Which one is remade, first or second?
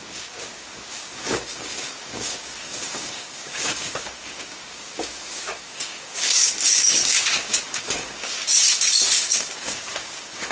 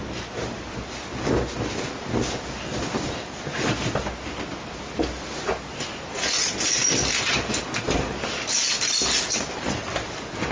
first